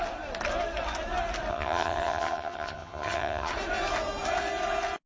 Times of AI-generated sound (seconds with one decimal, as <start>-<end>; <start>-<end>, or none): 1.5-3.5